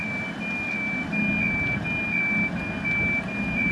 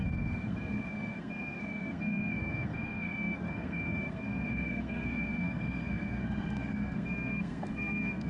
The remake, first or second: second